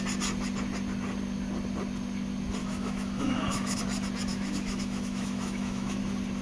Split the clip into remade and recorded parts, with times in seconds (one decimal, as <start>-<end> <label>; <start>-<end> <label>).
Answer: 0.0-2.6 recorded; 2.6-3.8 remade; 3.8-4.3 recorded; 4.3-6.0 remade; 6.0-6.4 recorded